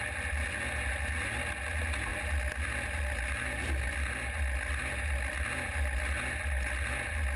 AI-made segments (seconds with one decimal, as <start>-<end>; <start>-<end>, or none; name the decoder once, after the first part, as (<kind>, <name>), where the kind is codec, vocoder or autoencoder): none